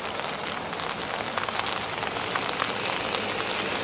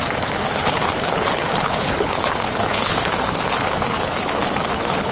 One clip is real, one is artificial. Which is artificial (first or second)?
second